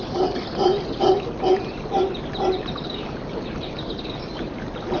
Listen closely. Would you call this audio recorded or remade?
recorded